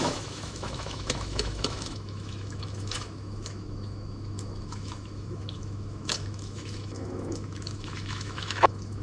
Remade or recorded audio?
remade